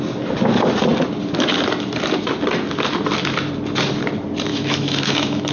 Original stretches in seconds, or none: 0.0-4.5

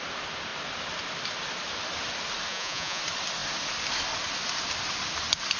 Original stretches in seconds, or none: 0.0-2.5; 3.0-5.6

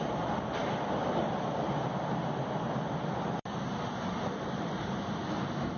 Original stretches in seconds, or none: 0.0-5.8

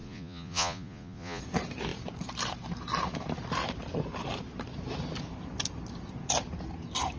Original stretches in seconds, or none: 1.4-7.2

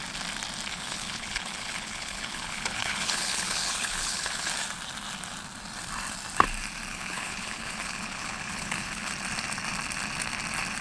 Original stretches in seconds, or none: 0.0-0.7; 4.5-6.9; 9.1-10.8

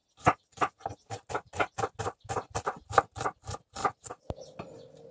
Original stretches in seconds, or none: 0.0-5.1

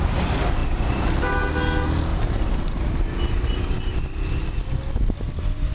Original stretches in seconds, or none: 0.0-5.7